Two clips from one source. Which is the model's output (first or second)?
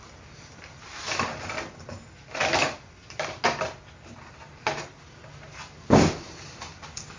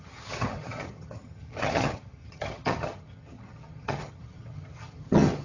second